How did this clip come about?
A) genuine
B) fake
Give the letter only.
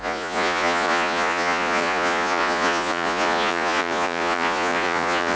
B